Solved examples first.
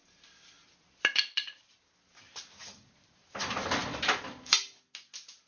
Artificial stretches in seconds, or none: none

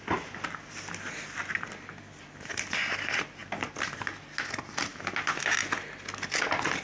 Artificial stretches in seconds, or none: none

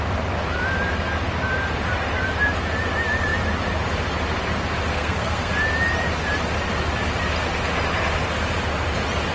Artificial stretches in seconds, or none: 4.9-5.5 (codec, SNAC)

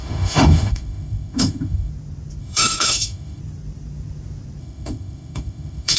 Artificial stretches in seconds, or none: 0.0-1.9 (autoencoder, DAC-VAE); 2.4-3.4; 4.6-6.0

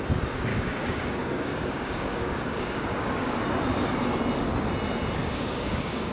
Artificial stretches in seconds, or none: 0.5-3.4 (codec, DAC); 5.2-6.1